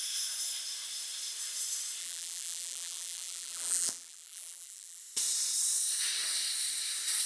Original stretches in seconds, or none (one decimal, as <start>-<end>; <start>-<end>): 0.0-2.0; 5.0-7.3